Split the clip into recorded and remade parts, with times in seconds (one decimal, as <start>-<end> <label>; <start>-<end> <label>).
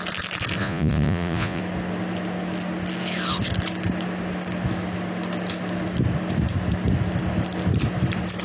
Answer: 0.0-0.6 recorded; 0.6-1.6 remade; 1.6-8.4 recorded